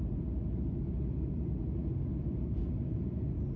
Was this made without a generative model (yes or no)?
yes